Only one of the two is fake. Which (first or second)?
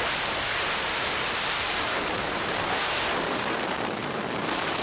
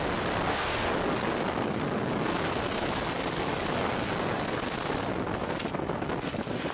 first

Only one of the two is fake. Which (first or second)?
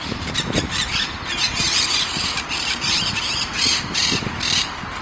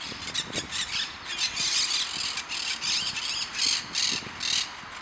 first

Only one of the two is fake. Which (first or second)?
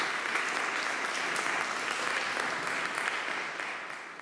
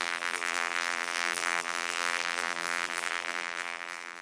second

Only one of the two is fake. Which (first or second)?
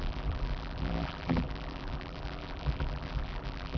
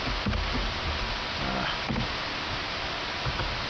first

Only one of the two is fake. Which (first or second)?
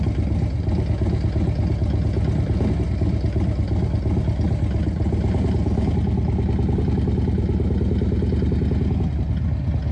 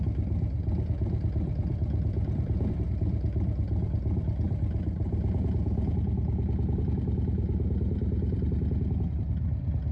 second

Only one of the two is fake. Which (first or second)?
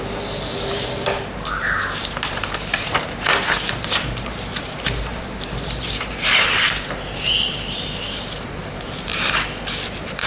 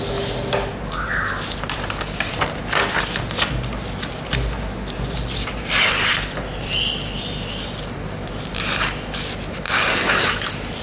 first